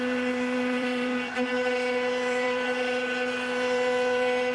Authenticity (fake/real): fake